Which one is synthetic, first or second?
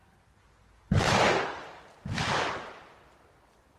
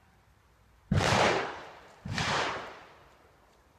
second